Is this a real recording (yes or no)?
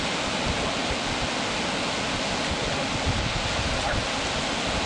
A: yes